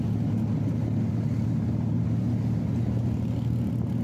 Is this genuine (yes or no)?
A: yes